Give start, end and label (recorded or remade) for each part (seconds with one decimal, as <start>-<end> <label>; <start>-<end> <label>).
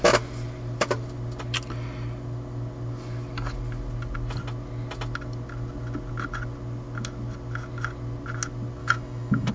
0.0-8.8 recorded; 8.8-9.5 remade